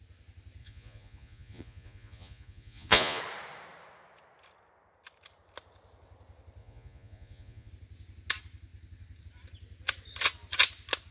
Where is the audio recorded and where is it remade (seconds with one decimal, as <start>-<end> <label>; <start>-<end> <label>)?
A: 0.0-0.6 recorded; 0.6-3.2 remade; 3.2-6.6 recorded; 6.6-7.7 remade; 7.7-11.1 recorded

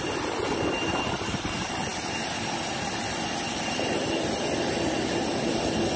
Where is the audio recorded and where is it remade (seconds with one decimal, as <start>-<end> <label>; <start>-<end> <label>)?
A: 0.0-6.0 recorded

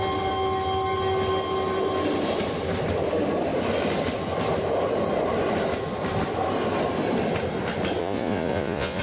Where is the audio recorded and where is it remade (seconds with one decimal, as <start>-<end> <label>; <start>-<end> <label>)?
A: 0.0-8.0 recorded; 8.0-9.0 remade